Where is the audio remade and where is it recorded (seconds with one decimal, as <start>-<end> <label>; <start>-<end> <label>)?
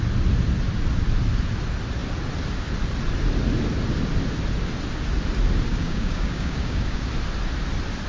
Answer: 0.0-5.7 recorded; 5.7-7.1 remade; 7.1-8.1 recorded